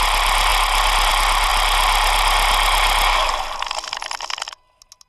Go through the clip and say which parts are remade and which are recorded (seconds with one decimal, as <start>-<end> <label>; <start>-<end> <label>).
0.0-5.1 recorded